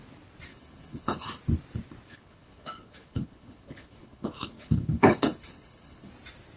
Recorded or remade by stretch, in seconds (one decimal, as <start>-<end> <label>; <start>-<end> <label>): 0.0-0.5 recorded; 0.5-1.3 remade; 1.3-2.1 recorded; 2.1-6.1 remade; 6.1-6.6 recorded